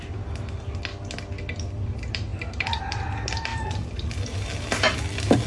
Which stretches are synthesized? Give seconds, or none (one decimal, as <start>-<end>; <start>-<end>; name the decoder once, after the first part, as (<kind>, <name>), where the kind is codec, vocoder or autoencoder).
3.5-5.5 (vocoder, BigVGAN v2)